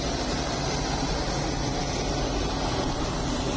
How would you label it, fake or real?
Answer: real